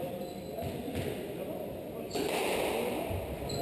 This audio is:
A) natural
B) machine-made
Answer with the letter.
A